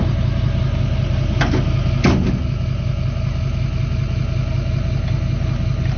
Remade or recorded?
recorded